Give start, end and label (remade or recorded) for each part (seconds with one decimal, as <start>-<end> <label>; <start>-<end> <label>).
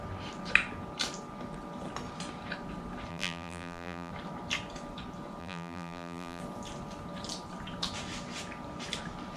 0.0-3.1 recorded; 3.1-4.1 remade; 4.1-5.4 recorded; 5.4-6.4 remade; 6.4-9.4 recorded